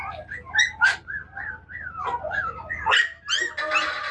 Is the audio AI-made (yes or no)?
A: no